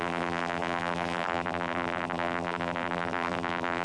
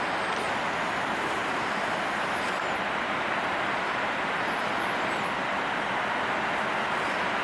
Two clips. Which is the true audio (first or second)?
second